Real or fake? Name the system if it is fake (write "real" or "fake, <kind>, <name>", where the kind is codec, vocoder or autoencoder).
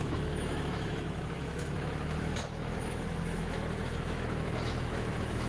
fake, autoencoder, DAC-VAE